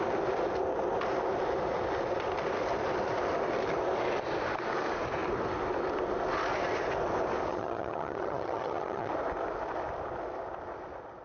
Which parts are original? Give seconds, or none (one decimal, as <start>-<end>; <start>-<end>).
0.0-7.5; 9.1-11.2